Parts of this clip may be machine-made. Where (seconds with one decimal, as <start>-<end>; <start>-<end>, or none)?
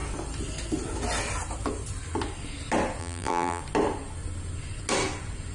3.0-3.6